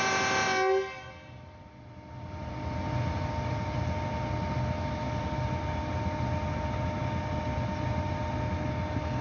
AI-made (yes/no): no